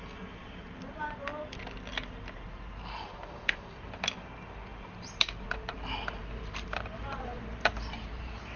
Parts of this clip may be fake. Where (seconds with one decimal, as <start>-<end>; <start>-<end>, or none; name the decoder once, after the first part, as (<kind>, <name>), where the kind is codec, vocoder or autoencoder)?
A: 0.4-1.0 (vocoder, BigVGAN v2); 1.9-3.7; 4.7-8.6